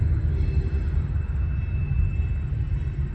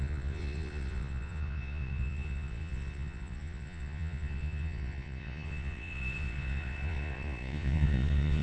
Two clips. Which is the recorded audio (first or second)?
first